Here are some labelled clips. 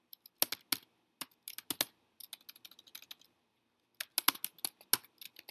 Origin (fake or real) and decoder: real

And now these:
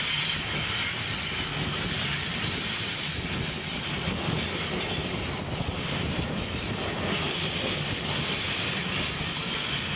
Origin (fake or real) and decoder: real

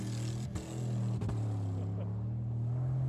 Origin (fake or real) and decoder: real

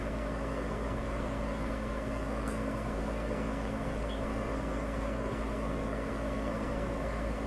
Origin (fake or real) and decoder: fake, codec, SNAC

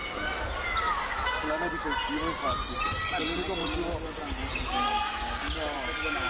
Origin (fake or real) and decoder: real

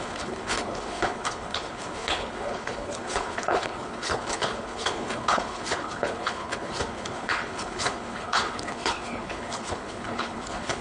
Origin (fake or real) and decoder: fake, codec, HILCodec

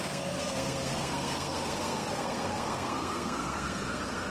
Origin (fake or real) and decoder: fake, codec, SNAC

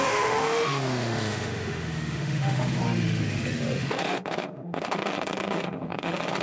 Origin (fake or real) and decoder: fake, autoencoder, DAC-VAE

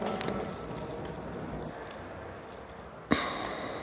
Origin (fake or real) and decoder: real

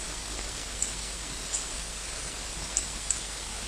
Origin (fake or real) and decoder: fake, codec, SNAC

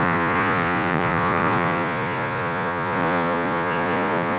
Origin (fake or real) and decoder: fake, vocoder, Vocos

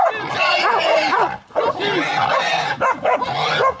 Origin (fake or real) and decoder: real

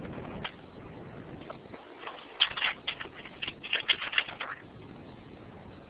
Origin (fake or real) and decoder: real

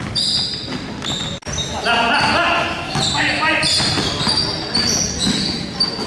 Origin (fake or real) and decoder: real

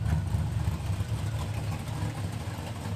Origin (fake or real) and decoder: real